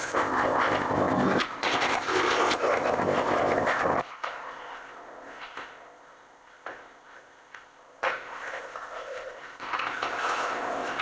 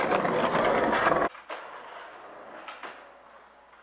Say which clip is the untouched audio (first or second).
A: second